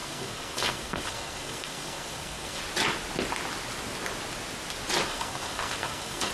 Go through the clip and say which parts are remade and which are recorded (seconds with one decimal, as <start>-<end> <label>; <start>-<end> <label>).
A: 0.0-2.6 remade; 2.6-5.1 recorded; 5.1-6.3 remade